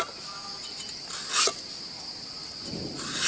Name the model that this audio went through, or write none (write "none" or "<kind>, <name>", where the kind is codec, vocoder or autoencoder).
none